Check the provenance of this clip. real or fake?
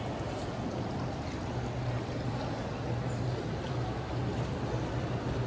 real